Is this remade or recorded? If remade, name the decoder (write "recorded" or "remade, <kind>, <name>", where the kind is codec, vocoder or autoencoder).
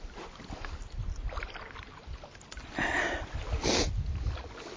recorded